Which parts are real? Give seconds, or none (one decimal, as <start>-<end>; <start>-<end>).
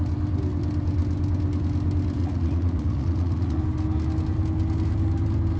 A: 0.0-2.2; 3.6-5.6